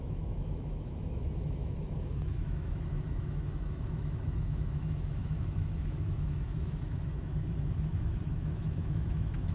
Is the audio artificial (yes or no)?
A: yes